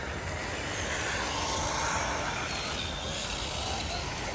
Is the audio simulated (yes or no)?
no